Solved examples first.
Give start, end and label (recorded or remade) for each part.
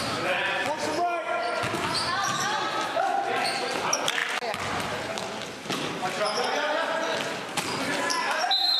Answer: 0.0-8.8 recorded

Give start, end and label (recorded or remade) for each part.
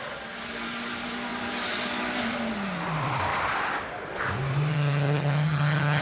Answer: 0.0-4.7 recorded; 4.7-6.0 remade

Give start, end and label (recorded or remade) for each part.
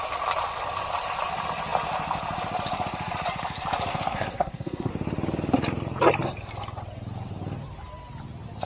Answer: 0.0-3.9 recorded; 3.9-4.9 remade; 4.9-8.7 recorded